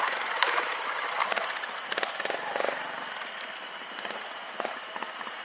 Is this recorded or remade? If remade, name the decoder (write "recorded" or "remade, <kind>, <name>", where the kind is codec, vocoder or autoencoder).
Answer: recorded